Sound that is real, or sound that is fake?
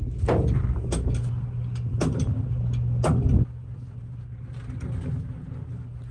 real